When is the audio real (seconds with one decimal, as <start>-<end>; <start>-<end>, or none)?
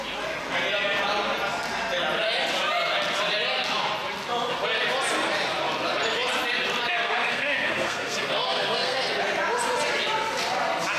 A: 0.0-6.9; 9.0-11.0